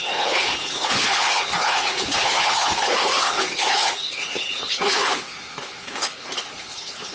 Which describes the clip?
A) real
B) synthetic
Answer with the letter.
B